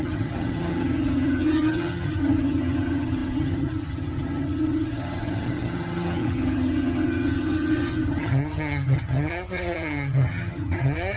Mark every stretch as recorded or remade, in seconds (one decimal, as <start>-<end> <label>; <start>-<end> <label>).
0.0-11.2 remade